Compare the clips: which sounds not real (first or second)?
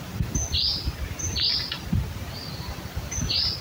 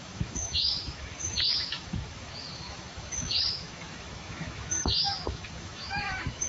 second